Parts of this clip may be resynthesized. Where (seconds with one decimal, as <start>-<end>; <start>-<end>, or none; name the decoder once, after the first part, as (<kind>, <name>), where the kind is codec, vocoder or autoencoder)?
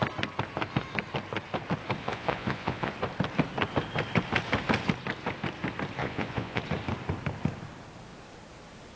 2.0-2.9 (vocoder, Vocos); 6.0-6.6